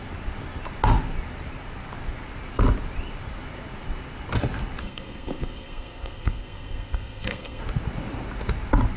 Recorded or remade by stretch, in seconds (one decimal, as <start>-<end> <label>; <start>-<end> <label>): 0.0-4.8 recorded; 4.8-7.6 remade; 7.6-9.0 recorded